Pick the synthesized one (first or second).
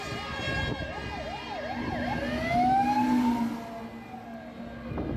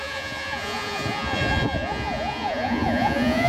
second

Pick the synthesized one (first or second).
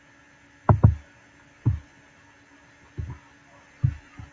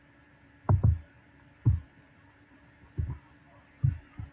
second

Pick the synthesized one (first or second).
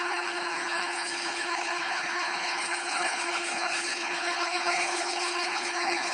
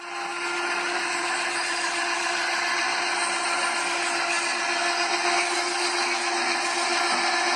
first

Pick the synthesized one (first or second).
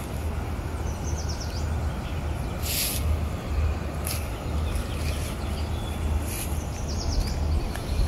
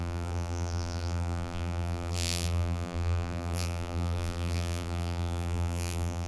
second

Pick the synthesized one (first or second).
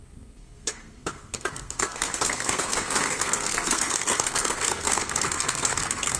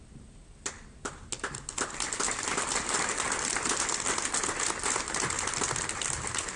first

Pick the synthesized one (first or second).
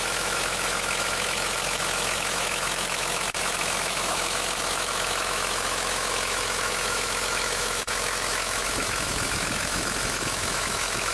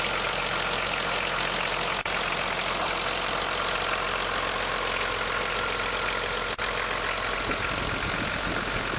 first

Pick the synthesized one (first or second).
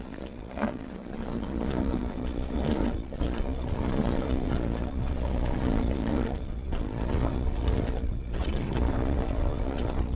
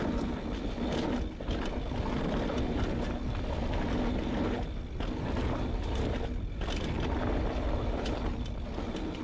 first